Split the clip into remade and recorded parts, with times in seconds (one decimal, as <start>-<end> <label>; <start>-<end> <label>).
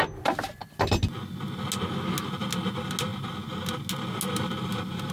0.0-5.1 recorded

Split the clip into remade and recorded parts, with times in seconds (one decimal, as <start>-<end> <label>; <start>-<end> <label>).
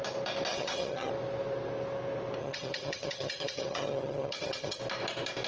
0.0-0.5 recorded; 0.5-1.1 remade; 1.1-2.4 recorded; 2.4-4.8 remade; 4.8-5.5 recorded